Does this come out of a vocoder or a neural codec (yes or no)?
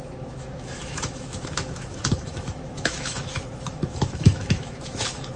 yes